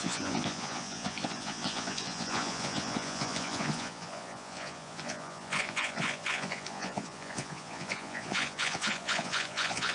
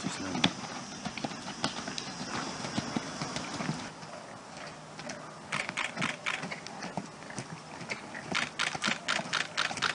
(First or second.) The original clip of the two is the second